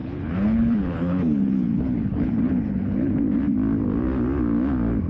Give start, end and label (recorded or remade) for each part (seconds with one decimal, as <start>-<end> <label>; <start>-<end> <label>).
0.0-3.1 remade; 3.1-5.1 recorded